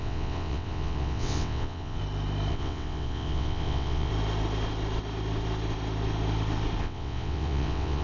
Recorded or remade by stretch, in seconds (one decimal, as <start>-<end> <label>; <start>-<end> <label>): 0.0-2.0 remade; 2.0-2.5 recorded; 2.5-4.1 remade; 4.1-6.8 recorded; 6.8-8.0 remade